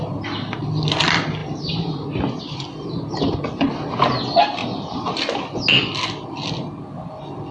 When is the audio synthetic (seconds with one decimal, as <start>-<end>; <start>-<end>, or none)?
1.4-2.4